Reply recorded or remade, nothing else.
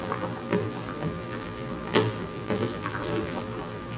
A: remade